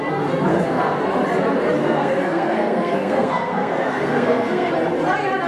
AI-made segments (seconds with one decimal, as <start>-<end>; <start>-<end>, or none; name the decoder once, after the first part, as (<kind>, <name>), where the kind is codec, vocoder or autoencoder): 0.5-1.0 (codec, SNAC); 1.8-4.7

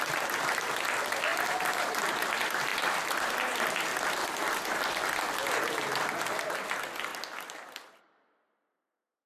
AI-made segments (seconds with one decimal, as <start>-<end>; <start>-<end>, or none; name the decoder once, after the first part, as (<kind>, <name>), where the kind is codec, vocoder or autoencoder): 1.3-2.0 (vocoder, BigVGAN v2); 2.7-3.2; 3.9-5.2

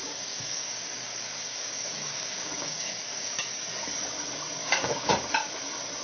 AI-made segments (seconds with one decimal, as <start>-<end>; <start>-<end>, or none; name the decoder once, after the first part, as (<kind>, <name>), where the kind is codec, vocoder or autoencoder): 0.0-3.6 (codec, DAC); 4.6-5.1

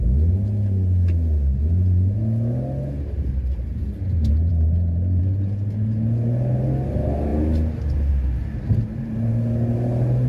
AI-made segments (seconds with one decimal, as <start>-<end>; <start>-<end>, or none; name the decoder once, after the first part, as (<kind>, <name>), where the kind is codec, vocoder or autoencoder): none

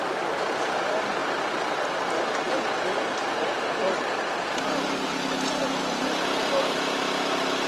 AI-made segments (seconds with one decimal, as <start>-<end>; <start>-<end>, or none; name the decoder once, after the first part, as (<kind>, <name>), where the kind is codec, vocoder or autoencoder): 0.0-1.2 (vocoder, BigVGAN v2); 5.8-7.7

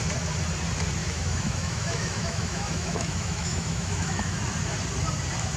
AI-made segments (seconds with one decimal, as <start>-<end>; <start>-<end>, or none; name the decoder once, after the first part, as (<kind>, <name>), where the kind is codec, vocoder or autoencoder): 1.0-4.4 (autoencoder, DAC-VAE)